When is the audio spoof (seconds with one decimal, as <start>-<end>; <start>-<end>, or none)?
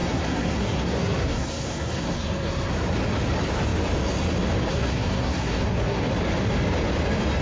0.0-2.7; 4.7-6.1